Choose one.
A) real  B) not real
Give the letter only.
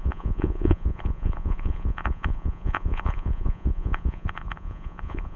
B